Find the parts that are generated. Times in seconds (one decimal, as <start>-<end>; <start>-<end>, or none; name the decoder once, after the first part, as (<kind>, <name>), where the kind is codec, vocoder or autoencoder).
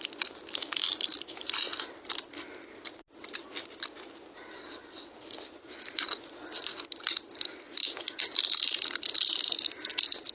none